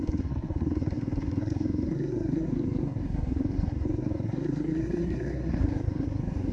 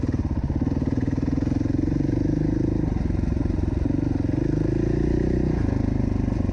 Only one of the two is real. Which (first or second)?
second